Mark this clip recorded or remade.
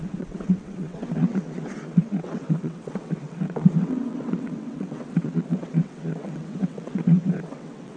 remade